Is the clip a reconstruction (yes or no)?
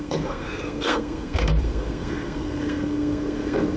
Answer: yes